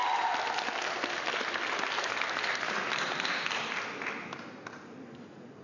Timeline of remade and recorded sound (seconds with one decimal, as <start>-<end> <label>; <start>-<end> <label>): 0.0-5.6 recorded